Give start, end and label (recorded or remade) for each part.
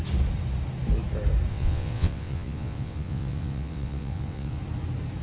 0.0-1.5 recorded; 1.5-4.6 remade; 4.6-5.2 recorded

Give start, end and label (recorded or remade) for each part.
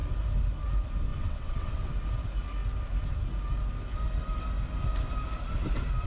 0.0-1.1 recorded; 1.1-1.9 remade; 1.9-6.1 recorded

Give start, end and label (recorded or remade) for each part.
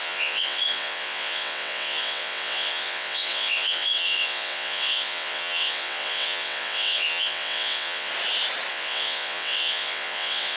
0.0-8.1 remade; 8.1-8.7 recorded; 8.7-10.6 remade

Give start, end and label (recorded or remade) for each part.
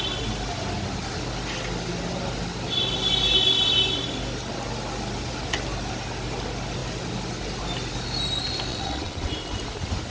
0.0-8.7 recorded; 8.7-9.3 remade; 9.3-10.1 recorded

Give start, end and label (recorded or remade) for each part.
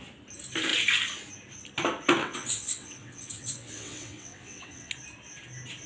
0.0-2.2 recorded; 2.2-4.9 remade; 4.9-5.9 recorded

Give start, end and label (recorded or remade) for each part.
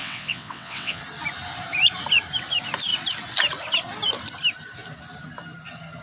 0.0-1.0 remade; 1.0-6.0 recorded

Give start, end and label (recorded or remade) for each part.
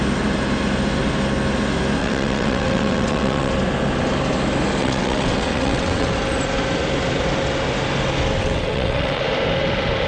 0.0-2.0 recorded; 2.0-3.5 remade; 3.5-4.8 recorded; 4.8-6.1 remade; 6.1-8.4 recorded; 8.4-9.2 remade; 9.2-10.1 recorded